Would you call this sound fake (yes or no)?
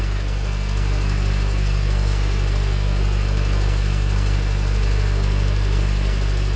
yes